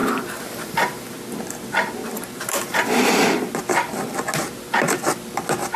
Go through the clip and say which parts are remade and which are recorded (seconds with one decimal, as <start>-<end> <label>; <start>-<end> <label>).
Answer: 0.0-1.7 remade; 1.7-2.7 recorded; 2.7-3.6 remade; 3.6-5.8 recorded

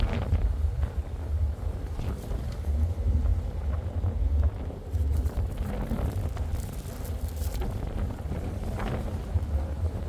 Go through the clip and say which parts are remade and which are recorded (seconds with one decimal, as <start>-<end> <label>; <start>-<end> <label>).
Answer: 0.0-10.1 recorded